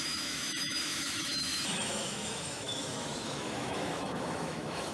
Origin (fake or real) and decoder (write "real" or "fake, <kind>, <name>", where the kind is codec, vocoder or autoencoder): fake, autoencoder, DAC-VAE